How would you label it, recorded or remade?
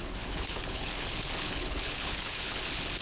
remade